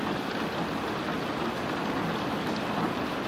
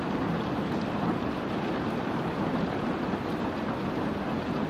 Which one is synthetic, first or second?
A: second